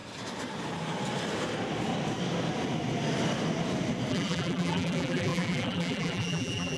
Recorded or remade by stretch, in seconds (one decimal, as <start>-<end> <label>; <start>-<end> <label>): 0.0-4.1 recorded; 4.1-6.8 remade